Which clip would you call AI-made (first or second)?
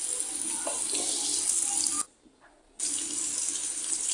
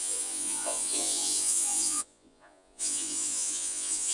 second